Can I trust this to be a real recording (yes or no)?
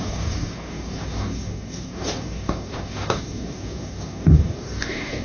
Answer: no